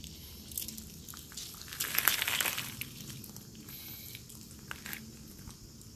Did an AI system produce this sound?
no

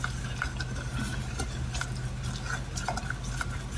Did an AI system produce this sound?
no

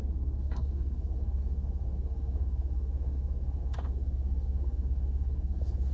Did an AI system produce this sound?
yes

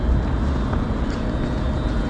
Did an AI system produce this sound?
no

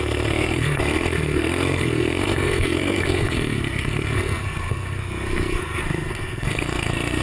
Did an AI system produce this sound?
yes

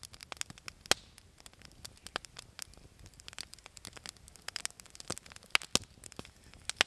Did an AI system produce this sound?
no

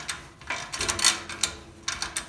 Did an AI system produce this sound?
no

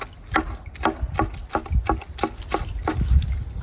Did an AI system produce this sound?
no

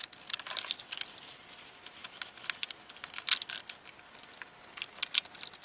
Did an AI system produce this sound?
no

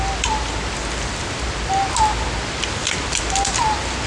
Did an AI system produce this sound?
no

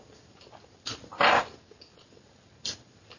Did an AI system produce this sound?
no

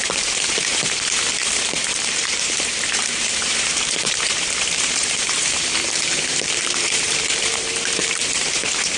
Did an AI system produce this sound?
yes